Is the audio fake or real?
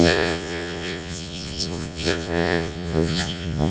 fake